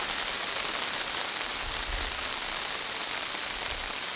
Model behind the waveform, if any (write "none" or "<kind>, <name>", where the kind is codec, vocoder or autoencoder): none